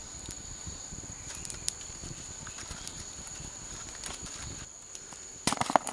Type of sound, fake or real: real